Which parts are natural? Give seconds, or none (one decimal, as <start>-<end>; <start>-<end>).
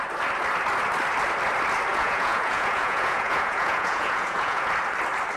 0.0-1.9; 4.7-5.4